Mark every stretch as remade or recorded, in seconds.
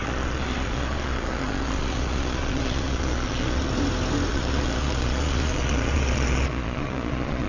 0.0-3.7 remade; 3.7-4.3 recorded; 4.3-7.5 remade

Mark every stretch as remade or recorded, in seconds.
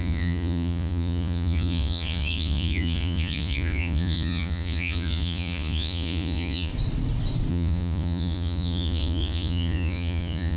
0.0-6.7 remade; 6.7-7.5 recorded; 7.5-10.6 remade